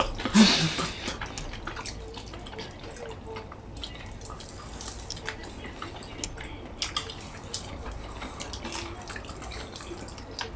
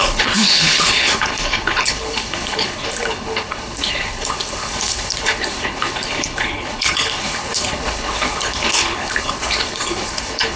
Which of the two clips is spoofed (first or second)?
second